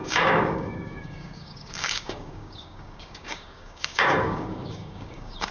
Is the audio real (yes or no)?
no